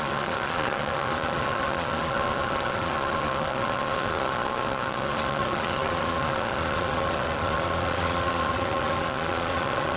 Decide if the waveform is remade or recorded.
remade